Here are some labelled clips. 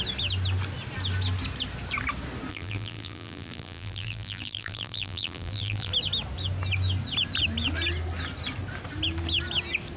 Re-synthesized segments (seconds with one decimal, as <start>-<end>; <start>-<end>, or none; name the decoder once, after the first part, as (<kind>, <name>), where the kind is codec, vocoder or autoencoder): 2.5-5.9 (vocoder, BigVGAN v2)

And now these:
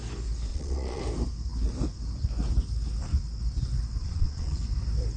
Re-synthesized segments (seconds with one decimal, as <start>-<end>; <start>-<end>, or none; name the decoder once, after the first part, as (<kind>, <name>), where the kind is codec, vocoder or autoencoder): 0.5-1.0 (vocoder, Vocos); 4.0-4.6

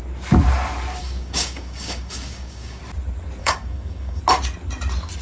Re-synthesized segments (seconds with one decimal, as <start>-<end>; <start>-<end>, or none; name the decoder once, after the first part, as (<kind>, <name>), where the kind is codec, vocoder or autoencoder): 1.0-2.8 (codec, DAC); 3.4-4.2